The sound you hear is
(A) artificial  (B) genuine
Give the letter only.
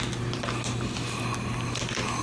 B